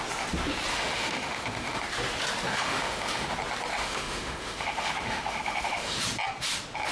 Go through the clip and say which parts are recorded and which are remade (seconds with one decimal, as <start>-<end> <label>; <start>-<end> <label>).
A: 0.0-0.7 recorded; 0.7-1.8 remade; 1.8-2.5 recorded; 2.5-3.3 remade; 3.3-3.7 recorded; 3.7-6.0 remade; 6.0-6.9 recorded